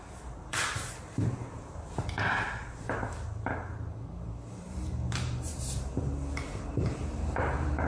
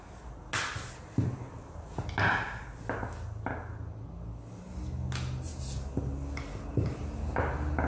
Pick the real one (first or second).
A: second